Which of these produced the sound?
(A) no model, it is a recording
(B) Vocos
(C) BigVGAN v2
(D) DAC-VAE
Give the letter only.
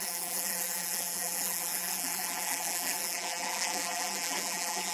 C